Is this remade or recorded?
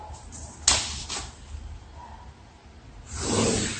recorded